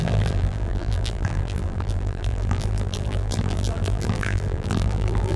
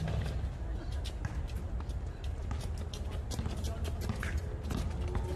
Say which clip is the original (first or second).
second